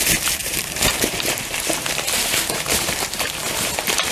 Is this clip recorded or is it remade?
remade